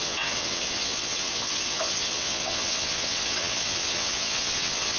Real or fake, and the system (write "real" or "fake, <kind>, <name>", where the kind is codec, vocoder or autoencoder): fake, vocoder, WaveNeXt